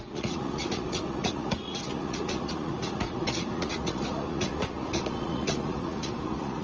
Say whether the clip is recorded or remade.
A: remade